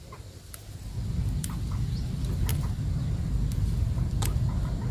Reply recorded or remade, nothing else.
recorded